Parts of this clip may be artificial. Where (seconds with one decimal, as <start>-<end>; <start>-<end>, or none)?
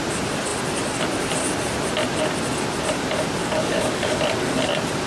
3.4-4.2